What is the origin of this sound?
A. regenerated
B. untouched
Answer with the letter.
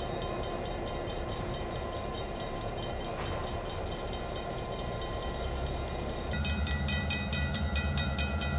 A